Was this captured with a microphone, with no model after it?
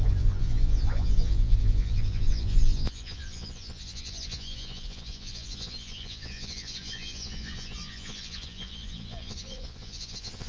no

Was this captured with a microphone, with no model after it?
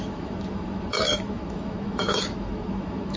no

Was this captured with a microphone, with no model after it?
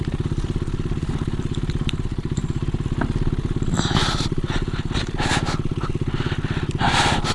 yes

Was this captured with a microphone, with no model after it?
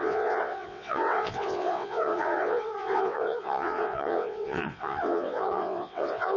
no